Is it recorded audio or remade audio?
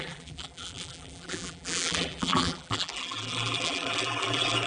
remade